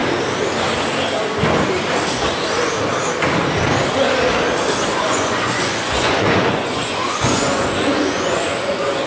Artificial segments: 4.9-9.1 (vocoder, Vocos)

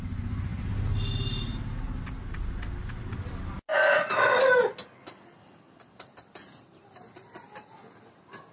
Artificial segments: none

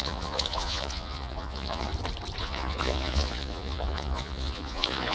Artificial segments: 0.0-1.9 (vocoder, Vocos); 2.4-5.1

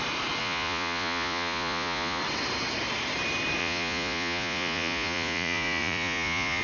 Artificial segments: 0.4-2.2 (vocoder, Vocos); 3.6-6.6

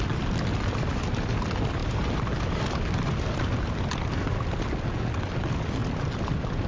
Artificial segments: none